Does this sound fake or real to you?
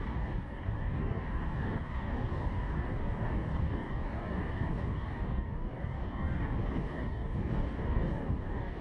fake